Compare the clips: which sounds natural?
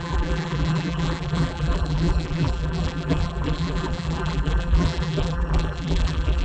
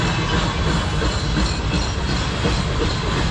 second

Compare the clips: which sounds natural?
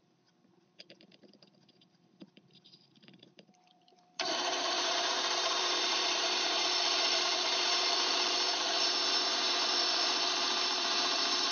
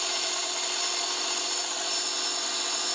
second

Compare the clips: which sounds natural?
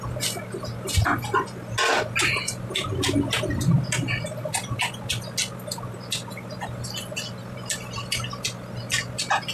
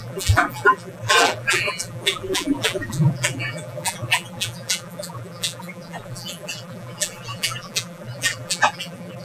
first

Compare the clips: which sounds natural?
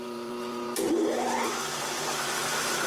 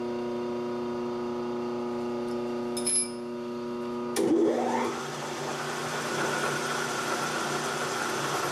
second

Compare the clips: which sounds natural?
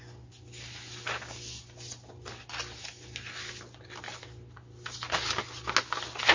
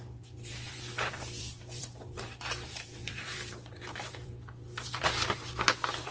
first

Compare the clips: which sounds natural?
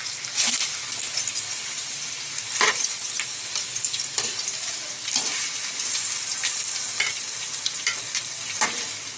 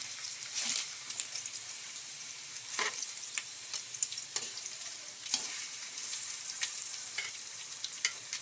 first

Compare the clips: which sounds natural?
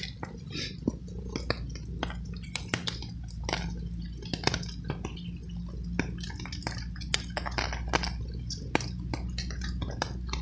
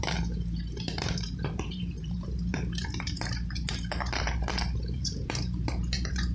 first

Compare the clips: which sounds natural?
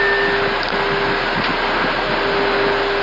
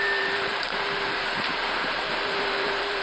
first